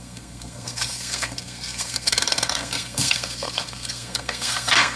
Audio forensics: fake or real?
fake